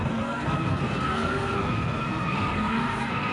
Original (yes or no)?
no